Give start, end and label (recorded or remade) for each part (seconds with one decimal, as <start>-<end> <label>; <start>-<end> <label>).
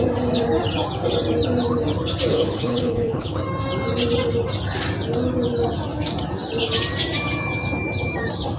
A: 0.0-2.3 recorded; 2.3-3.4 remade; 3.4-8.6 recorded